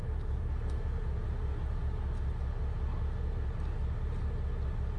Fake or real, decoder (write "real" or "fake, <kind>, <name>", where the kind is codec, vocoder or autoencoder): real